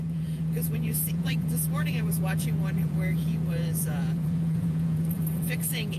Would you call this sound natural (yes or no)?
no